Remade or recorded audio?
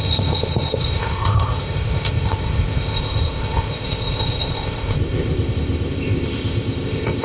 remade